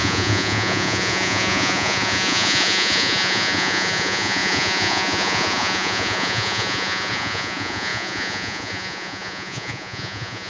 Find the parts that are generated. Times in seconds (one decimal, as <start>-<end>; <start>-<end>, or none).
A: 0.0-10.5